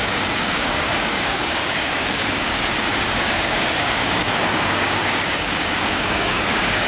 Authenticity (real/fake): fake